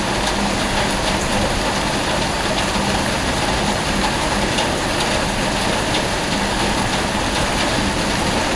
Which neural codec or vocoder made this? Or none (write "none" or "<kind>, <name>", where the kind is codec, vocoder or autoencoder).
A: none